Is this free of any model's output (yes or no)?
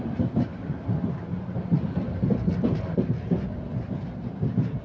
yes